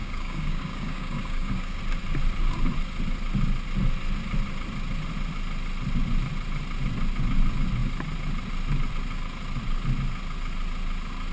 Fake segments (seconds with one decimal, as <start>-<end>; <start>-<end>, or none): 0.0-1.8